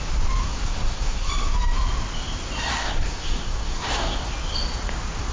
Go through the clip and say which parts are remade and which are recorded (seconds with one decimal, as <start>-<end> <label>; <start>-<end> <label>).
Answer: 0.0-0.4 recorded; 0.4-1.3 remade; 1.3-2.7 recorded; 2.7-4.3 remade; 4.3-5.3 recorded